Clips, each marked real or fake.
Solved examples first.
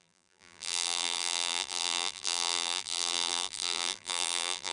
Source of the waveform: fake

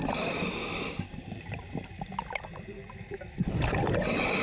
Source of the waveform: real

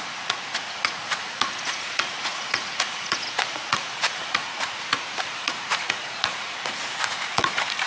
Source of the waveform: fake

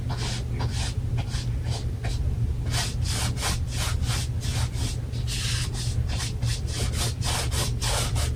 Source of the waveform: real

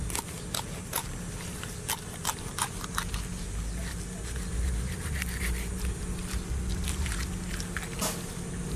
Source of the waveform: real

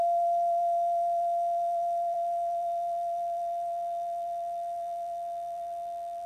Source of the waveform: fake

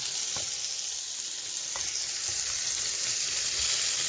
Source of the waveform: real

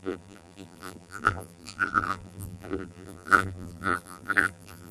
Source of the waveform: fake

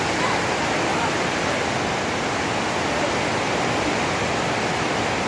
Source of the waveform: real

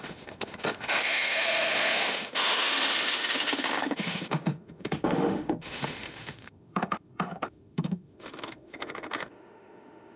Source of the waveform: fake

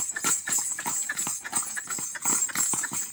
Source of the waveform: fake